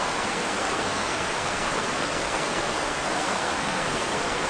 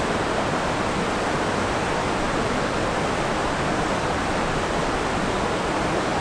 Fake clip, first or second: first